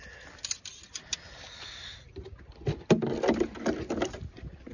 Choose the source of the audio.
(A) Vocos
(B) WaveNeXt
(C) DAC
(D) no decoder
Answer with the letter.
D